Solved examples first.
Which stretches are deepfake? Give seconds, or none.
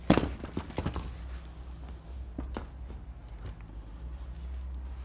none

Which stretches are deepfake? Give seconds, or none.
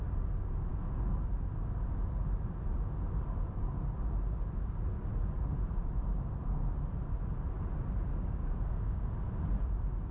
8.1-9.0 (codec, DAC)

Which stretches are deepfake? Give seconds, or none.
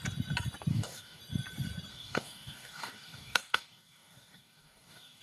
0.7-1.2 (codec, DAC); 1.9-5.2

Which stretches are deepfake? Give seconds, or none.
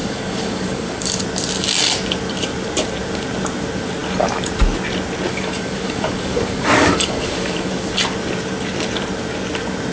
0.0-1.2 (codec, DAC); 5.3-7.9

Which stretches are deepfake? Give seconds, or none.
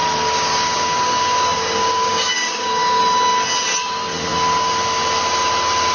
0.0-3.0 (codec, DAC)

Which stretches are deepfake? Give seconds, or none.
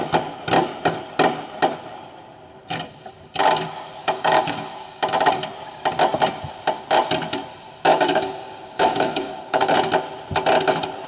4.0-5.0 (codec, DAC); 7.9-9.7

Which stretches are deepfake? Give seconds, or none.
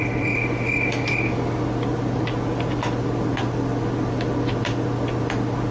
none